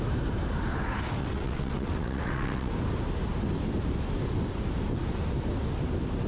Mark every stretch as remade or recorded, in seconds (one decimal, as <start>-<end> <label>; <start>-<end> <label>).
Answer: 0.0-1.2 recorded; 1.2-2.7 remade; 2.7-6.3 recorded